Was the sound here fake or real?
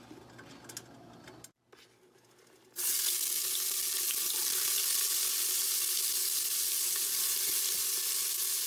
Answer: real